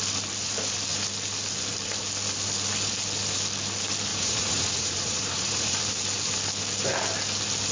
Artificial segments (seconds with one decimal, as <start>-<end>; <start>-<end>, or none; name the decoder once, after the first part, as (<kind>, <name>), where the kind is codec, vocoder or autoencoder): 4.1-5.8 (vocoder, Vocos)